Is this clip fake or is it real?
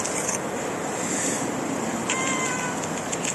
real